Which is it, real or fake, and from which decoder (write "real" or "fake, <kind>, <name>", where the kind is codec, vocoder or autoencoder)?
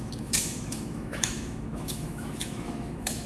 fake, autoencoder, DAC-VAE